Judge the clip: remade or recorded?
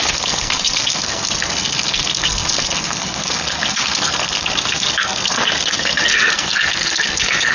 remade